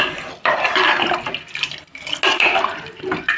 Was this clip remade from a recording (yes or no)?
no